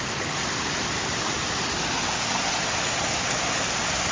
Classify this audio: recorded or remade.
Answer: recorded